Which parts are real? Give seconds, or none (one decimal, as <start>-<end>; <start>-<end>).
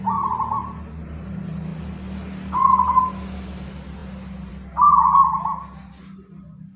0.0-6.8